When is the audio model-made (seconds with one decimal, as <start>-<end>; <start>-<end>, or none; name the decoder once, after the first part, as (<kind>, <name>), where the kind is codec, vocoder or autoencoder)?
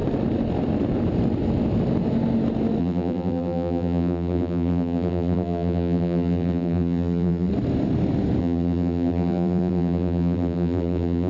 2.8-7.5 (vocoder, BigVGAN v2); 8.4-11.3